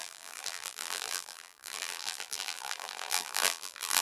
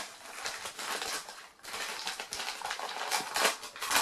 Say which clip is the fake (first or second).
first